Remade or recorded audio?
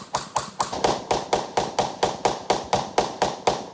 recorded